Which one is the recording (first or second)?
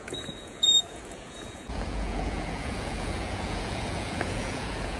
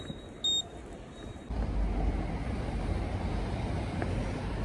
second